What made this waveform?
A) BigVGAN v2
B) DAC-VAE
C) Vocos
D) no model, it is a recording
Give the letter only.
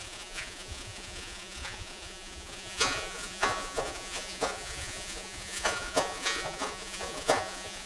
C